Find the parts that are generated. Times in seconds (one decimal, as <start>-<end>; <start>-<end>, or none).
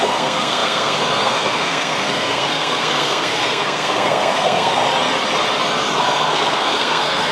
0.0-4.8; 6.0-7.3